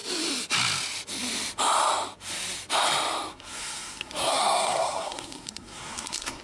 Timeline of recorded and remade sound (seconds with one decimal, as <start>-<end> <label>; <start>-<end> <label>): 0.0-3.3 recorded; 3.3-6.4 remade